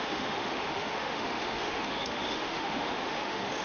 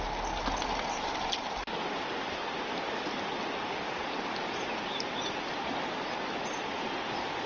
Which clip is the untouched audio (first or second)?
second